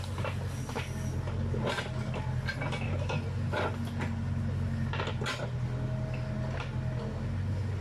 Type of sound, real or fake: real